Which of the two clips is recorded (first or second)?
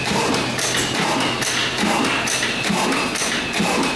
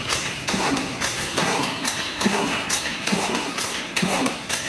first